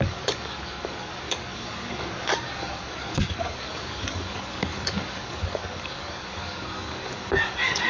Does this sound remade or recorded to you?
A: remade